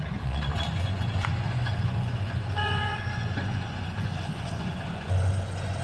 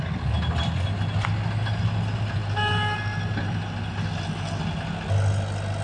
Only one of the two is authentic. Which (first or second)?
second